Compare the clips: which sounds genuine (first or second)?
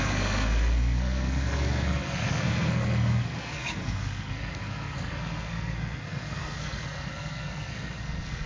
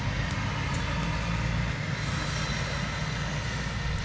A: second